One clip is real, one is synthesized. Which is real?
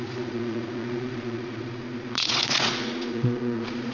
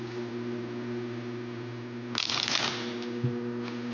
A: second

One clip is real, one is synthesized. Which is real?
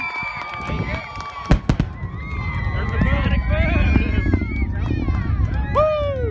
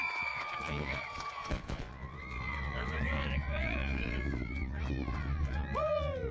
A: first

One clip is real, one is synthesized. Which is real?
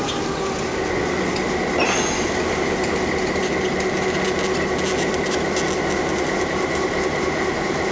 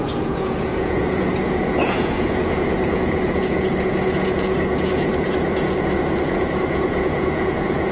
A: first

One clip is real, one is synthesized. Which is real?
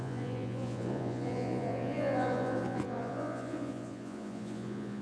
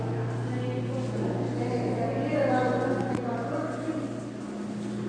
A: second